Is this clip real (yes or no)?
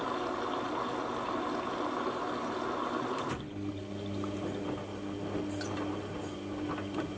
yes